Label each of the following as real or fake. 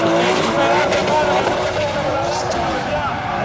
real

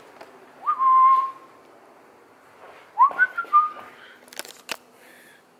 real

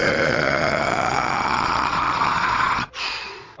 fake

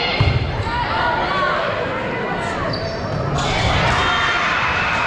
real